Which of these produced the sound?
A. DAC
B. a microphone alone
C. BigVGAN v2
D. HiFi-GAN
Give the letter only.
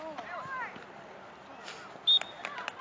B